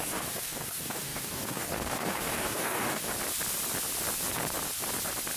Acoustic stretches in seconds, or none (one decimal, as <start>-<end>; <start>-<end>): 3.0-5.4